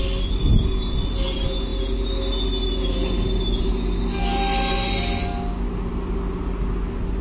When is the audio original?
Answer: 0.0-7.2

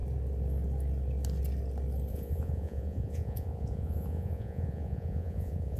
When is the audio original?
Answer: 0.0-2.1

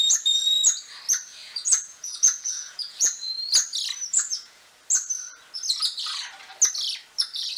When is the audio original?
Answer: 0.0-1.4; 3.3-4.1; 4.7-7.6